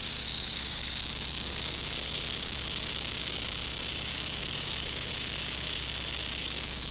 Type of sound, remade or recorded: remade